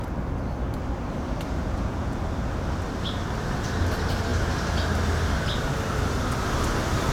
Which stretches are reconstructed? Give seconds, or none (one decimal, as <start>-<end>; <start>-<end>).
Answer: 1.6-2.2